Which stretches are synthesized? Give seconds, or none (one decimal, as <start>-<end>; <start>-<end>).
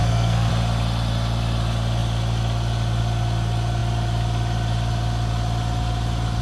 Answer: 0.0-0.5